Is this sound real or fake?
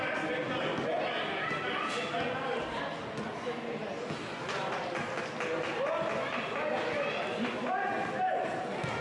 real